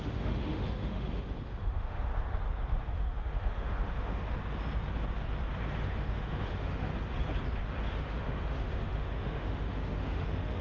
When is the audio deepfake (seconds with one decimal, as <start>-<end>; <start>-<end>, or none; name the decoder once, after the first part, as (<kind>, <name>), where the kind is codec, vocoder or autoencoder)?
0.0-2.1 (autoencoder, DAC-VAE); 2.8-4.4; 5.8-6.9; 7.9-10.6